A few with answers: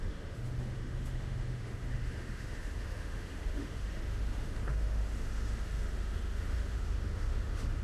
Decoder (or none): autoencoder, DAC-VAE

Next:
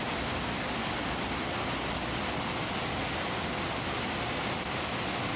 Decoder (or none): none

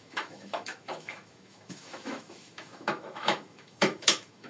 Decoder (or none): autoencoder, DAC-VAE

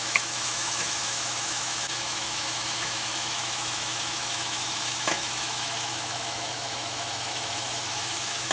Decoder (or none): autoencoder, DAC-VAE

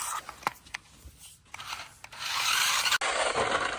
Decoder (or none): none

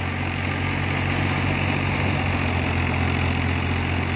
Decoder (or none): none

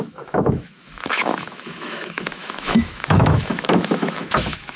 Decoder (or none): autoencoder, DAC-VAE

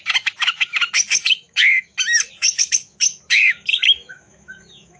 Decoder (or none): autoencoder, DAC-VAE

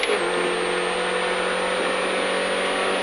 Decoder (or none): none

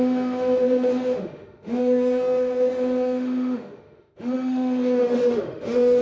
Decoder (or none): autoencoder, DAC-VAE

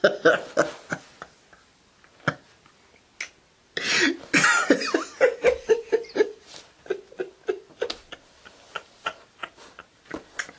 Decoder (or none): none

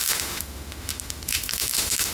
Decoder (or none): autoencoder, DAC-VAE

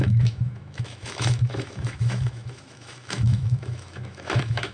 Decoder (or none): autoencoder, DAC-VAE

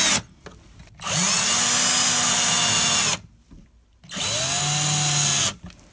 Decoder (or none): none